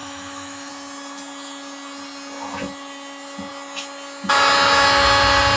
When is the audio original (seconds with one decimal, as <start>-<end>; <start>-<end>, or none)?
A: 0.7-5.6

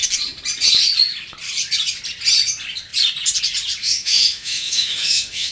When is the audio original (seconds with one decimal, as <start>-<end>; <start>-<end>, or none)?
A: 0.0-3.8

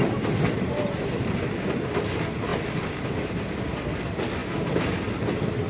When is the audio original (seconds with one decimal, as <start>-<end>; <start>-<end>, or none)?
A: 0.0-5.7

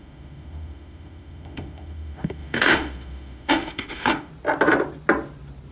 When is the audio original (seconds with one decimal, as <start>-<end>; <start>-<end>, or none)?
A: 4.3-5.7